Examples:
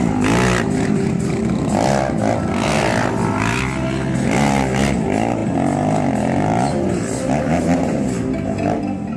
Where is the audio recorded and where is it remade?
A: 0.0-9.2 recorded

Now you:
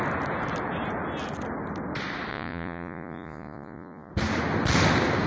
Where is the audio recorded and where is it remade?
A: 0.0-2.3 recorded; 2.3-4.1 remade; 4.1-5.3 recorded

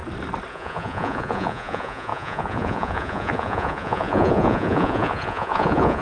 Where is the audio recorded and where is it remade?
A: 0.0-0.5 recorded; 0.5-6.0 remade

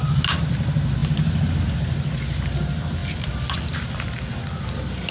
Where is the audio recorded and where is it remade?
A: 0.0-3.0 recorded; 3.0-5.1 remade